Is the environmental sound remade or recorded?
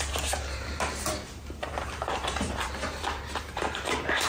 remade